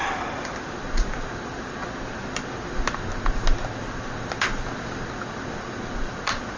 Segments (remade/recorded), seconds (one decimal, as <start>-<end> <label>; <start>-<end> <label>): 0.0-6.6 recorded